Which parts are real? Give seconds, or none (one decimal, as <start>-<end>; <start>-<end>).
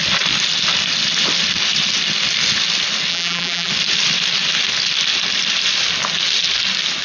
0.0-3.1; 3.7-7.0